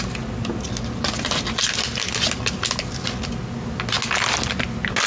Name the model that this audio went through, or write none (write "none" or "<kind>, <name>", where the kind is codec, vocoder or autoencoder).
none